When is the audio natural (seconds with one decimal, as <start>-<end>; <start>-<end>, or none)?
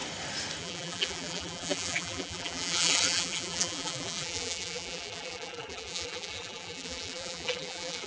0.0-0.6